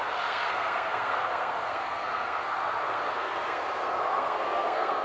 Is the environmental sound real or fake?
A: fake